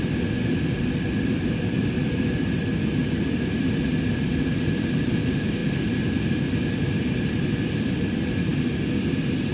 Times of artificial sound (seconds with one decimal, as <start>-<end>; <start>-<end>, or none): none